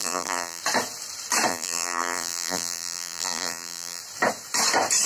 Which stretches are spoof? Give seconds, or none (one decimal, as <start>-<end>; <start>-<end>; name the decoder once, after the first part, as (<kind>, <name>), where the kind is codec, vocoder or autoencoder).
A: 0.0-0.6 (vocoder, BigVGAN v2); 1.5-4.0

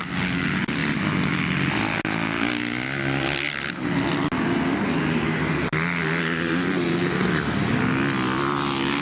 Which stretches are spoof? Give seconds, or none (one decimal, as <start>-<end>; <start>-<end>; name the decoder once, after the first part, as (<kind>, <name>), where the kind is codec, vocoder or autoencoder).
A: none

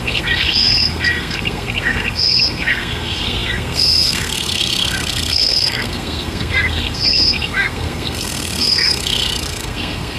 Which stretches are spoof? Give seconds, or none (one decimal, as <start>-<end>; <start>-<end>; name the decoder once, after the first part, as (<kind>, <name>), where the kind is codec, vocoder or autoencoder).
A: 0.0-10.2 (codec, SNAC)

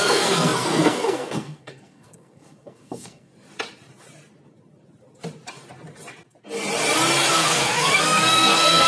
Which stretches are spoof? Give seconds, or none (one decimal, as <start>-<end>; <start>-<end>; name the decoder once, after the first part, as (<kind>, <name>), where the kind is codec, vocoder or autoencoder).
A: 0.0-3.3 (codec, SNAC); 7.3-8.9